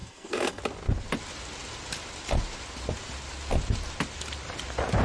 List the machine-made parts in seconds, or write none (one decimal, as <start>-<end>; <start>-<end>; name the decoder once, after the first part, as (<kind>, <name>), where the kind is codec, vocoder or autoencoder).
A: 0.0-0.6 (codec, SNAC)